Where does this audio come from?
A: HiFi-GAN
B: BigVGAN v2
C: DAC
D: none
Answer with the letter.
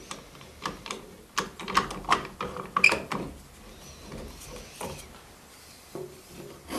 D